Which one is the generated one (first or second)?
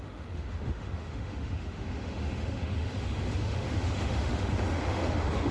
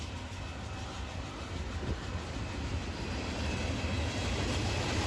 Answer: first